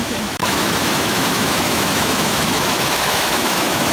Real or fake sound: fake